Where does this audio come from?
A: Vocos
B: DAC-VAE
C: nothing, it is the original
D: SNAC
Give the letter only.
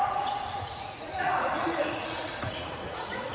A